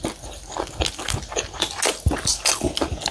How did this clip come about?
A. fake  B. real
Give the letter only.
B